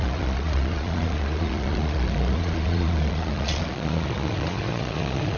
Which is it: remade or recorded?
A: remade